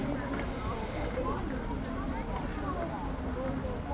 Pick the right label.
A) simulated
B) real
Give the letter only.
B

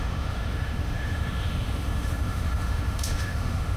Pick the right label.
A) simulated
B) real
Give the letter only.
A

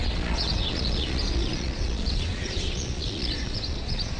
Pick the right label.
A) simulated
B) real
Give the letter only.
A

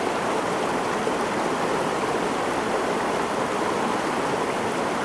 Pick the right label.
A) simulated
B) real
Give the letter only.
B